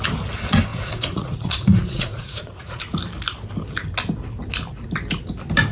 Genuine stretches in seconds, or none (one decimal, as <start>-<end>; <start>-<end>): 0.0-0.7; 2.8-5.7